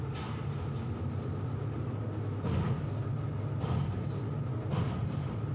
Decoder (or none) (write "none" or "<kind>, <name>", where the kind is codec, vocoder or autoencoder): none